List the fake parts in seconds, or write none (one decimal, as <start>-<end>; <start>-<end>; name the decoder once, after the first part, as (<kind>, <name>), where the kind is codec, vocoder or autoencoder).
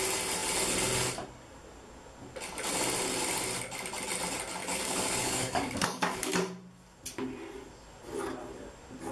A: 4.6-6.3 (codec, DAC)